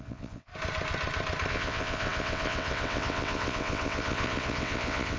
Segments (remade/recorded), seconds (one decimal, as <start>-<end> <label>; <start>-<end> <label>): 0.0-0.5 remade; 0.5-1.5 recorded; 1.5-5.2 remade